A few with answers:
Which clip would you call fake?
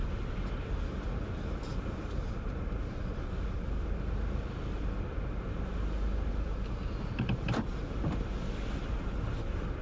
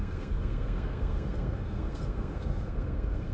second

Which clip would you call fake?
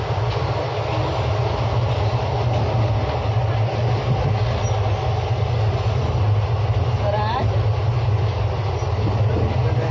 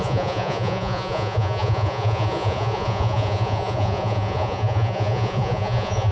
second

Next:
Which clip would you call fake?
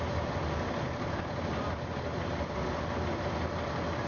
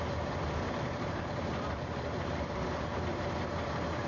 second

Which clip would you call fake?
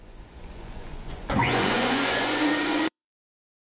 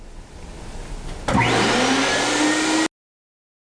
first